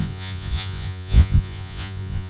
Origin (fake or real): fake